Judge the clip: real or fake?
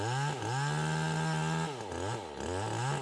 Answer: real